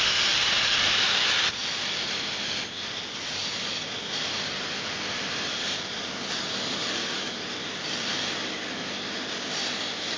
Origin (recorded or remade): recorded